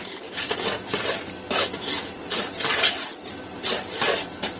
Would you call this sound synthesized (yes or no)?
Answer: no